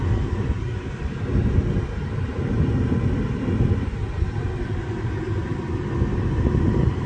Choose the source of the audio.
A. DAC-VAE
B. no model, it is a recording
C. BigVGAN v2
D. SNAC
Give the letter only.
B